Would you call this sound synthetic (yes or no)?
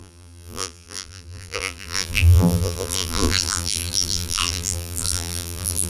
yes